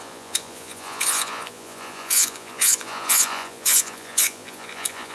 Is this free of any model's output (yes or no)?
no